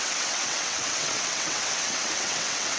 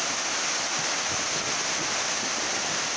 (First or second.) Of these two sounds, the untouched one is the second